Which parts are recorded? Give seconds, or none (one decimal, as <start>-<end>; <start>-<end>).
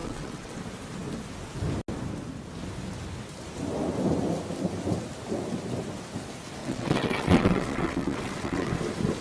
0.6-6.6; 8.7-9.2